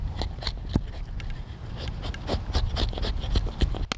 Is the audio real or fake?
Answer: real